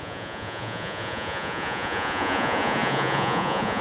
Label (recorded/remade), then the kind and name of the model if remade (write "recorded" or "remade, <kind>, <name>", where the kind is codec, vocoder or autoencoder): remade, vocoder, Vocos